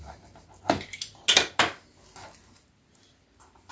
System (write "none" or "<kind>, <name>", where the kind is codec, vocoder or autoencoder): none